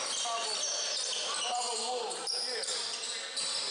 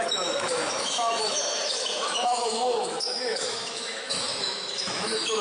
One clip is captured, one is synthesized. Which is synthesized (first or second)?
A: second